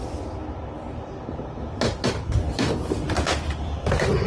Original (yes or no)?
yes